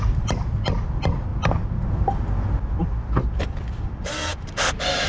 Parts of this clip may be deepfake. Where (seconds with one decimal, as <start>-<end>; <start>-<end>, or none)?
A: 0.0-1.3; 3.5-5.1